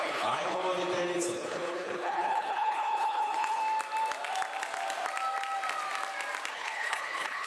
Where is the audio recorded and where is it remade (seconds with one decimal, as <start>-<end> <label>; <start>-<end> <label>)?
0.0-0.6 remade; 0.6-1.2 recorded; 1.2-3.6 remade; 3.6-6.5 recorded; 6.5-7.5 remade